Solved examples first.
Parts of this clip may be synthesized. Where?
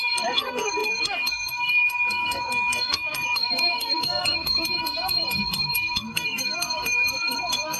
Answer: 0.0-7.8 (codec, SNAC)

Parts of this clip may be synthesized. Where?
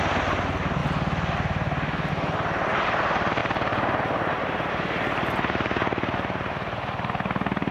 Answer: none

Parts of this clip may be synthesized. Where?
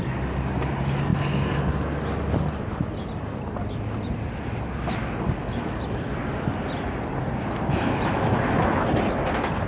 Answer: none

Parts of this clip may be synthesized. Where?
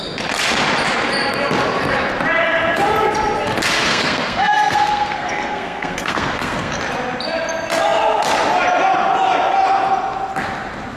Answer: 3.9-6.8 (codec, SNAC)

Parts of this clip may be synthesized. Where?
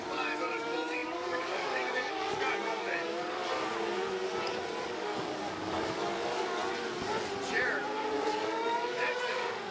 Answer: 0.0-3.4 (codec, DAC); 4.8-6.6; 8.1-9.7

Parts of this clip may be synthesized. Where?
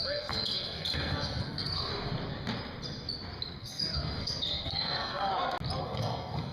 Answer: 0.0-1.9 (codec, SNAC); 3.6-5.3; 5.8-6.5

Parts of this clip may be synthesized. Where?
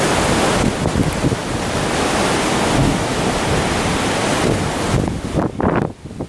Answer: none